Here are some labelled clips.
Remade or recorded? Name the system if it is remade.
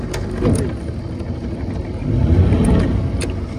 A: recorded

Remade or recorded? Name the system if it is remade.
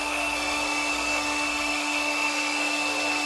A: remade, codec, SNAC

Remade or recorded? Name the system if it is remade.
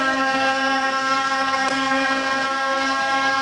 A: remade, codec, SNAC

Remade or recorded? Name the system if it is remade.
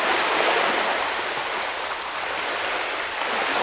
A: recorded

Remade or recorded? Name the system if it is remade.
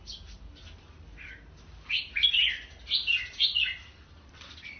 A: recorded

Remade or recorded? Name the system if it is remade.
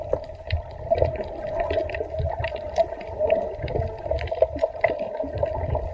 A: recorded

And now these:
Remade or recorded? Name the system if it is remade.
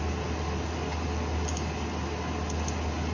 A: recorded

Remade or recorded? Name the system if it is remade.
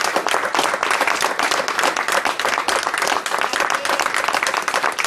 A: recorded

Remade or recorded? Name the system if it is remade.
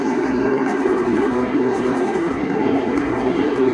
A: remade, codec, SNAC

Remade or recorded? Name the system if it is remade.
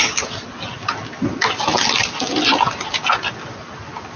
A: recorded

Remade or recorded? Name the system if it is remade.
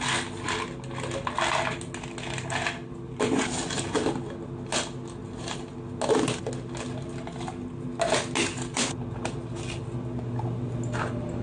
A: recorded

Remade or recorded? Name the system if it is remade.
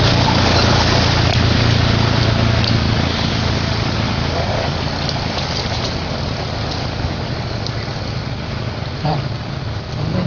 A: recorded